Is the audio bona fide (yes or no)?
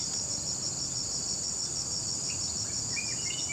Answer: yes